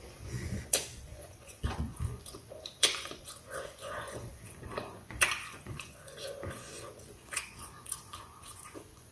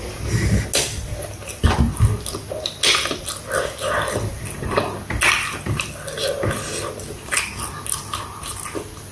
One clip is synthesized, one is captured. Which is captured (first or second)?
second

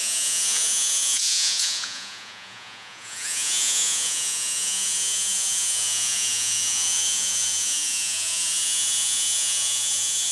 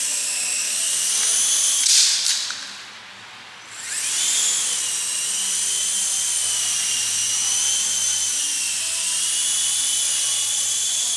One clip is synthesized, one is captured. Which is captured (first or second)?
second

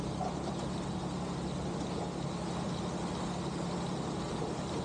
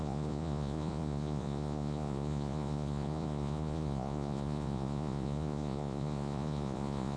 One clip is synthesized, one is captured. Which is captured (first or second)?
first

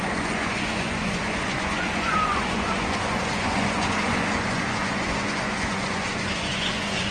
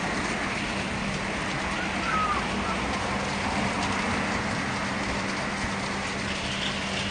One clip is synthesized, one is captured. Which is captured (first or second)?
second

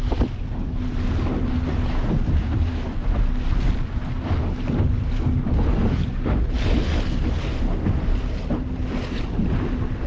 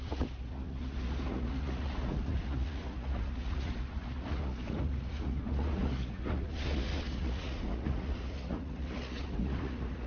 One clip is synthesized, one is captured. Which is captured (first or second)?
first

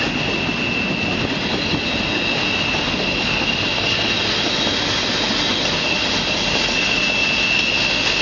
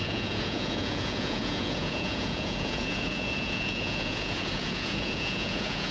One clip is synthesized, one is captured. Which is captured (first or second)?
first